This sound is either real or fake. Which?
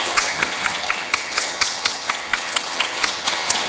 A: fake